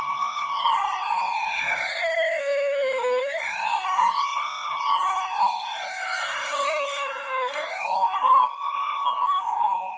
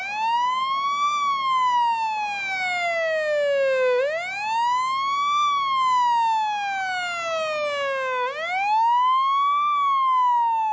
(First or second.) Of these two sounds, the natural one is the second